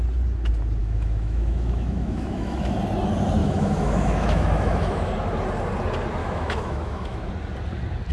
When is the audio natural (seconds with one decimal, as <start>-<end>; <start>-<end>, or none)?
0.0-0.8; 2.8-3.4; 5.1-6.2; 7.3-8.1